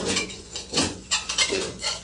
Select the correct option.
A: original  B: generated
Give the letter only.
B